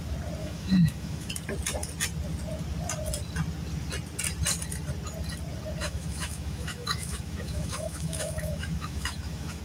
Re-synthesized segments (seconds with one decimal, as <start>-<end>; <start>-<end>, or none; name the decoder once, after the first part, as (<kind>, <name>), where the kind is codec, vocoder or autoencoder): 0.4-1.3 (autoencoder, DAC-VAE); 5.8-9.6